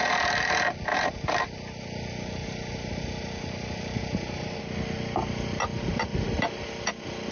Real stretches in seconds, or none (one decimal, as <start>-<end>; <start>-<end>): 0.0-0.9; 1.8-2.4; 4.4-5.9; 6.7-7.3